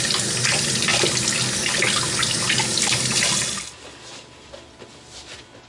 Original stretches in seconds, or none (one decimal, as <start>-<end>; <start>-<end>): 0.0-5.7